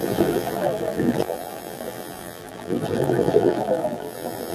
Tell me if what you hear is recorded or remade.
remade